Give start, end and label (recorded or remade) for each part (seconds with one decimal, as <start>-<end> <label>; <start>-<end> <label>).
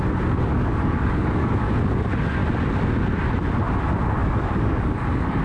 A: 0.0-0.5 recorded; 0.5-1.7 remade; 1.7-4.2 recorded; 4.2-5.4 remade